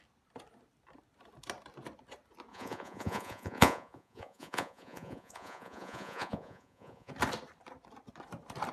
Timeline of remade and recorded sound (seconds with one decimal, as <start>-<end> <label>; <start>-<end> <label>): 0.0-2.5 recorded; 2.5-7.1 remade; 7.1-8.7 recorded